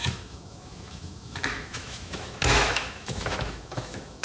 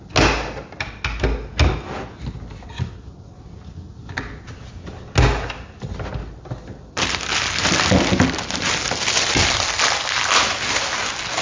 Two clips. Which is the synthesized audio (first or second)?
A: first